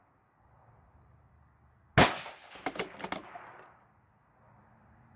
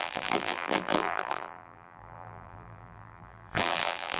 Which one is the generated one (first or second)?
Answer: second